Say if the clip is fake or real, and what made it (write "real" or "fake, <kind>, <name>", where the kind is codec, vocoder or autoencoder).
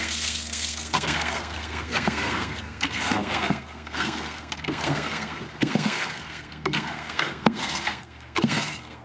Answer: fake, codec, SNAC